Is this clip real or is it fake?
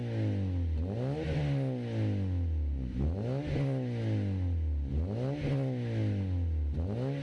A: real